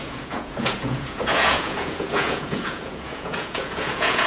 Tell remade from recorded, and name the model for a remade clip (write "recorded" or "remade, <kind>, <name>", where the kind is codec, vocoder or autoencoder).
remade, vocoder, Vocos